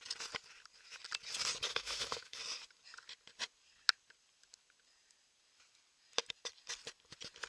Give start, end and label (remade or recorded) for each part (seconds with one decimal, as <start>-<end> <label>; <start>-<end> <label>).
0.0-1.7 recorded; 1.7-2.4 remade; 2.4-7.5 recorded

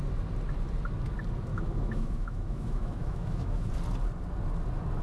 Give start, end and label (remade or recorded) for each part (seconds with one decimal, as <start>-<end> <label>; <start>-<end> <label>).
0.0-1.5 recorded; 1.5-3.7 remade; 3.7-5.0 recorded